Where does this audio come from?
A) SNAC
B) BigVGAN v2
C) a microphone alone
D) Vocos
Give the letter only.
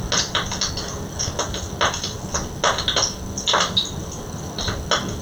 C